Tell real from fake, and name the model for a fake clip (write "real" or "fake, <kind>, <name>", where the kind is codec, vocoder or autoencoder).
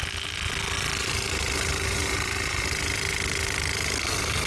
real